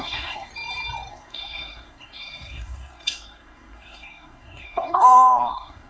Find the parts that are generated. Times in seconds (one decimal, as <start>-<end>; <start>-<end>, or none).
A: 0.0-0.5; 1.1-5.9